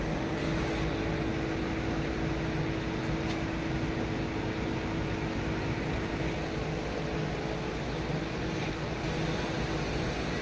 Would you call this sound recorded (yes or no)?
yes